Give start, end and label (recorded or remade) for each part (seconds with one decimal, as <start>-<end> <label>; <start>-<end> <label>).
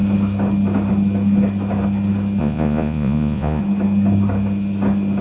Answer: 0.0-2.4 recorded; 2.4-3.6 remade; 3.6-5.2 recorded